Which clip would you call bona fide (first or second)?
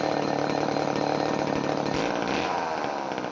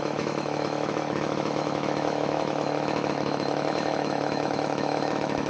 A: first